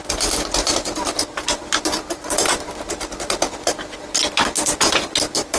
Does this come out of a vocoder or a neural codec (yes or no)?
no